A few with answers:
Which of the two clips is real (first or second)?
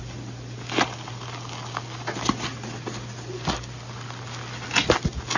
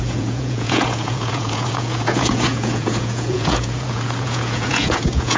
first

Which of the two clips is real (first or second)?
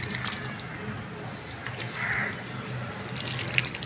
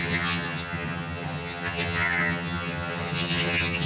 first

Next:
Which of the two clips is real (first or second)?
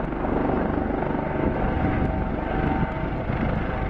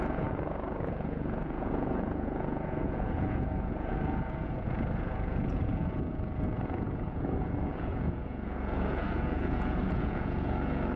first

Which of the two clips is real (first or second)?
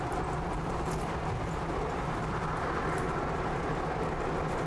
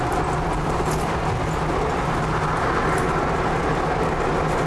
second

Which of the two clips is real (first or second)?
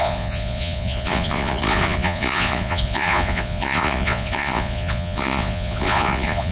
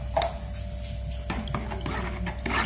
second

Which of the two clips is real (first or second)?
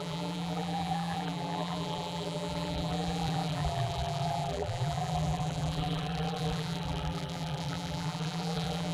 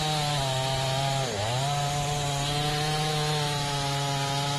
second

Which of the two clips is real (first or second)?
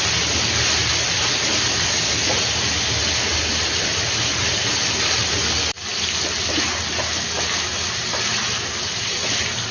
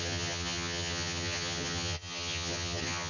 first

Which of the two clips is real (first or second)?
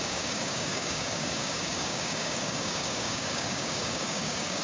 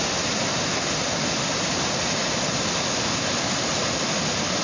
second